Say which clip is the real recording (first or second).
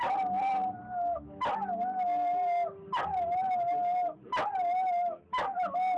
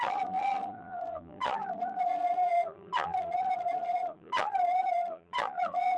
first